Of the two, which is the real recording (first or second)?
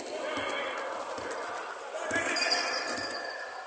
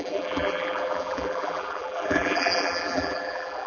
first